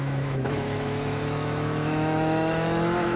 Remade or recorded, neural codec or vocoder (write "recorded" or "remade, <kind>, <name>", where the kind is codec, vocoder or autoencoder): remade, autoencoder, DAC-VAE